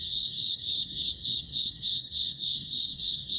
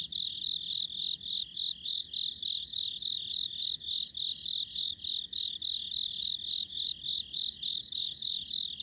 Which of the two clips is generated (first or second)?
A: first